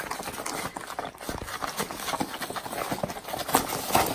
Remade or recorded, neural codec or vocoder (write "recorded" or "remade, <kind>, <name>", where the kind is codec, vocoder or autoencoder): recorded